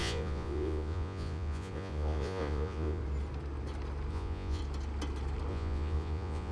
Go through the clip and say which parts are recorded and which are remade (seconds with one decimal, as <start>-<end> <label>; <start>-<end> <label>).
0.0-3.0 remade; 3.0-4.1 recorded; 4.1-4.6 remade; 4.6-5.5 recorded; 5.5-6.5 remade